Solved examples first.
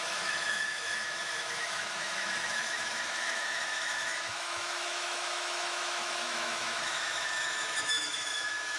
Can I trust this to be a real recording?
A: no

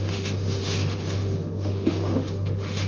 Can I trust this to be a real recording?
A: no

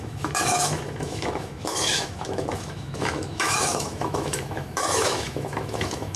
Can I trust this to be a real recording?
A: no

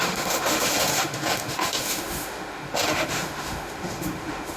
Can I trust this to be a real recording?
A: no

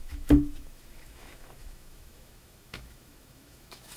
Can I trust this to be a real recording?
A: no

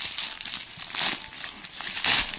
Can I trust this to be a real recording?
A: yes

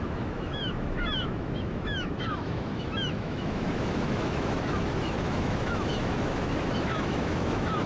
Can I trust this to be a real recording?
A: no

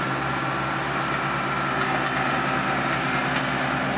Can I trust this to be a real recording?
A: yes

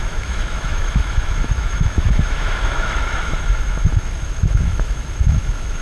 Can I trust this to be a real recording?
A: no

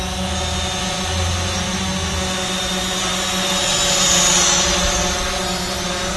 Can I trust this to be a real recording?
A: yes